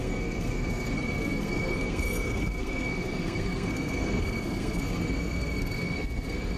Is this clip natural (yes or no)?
no